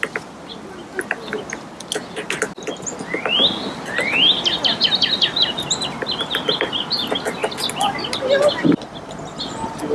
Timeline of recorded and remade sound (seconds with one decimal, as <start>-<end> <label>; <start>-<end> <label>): 0.0-9.9 recorded